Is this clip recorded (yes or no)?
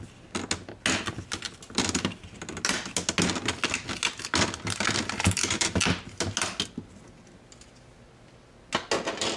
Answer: yes